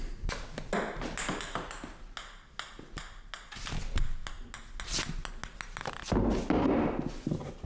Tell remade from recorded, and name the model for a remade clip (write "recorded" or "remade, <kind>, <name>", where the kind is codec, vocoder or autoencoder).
recorded